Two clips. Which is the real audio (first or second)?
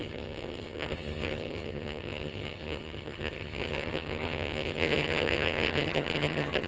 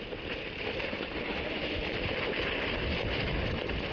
second